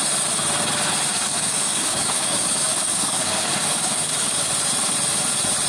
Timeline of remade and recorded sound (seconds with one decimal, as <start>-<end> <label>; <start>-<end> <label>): 0.0-1.1 recorded; 1.1-4.5 remade; 4.5-5.7 recorded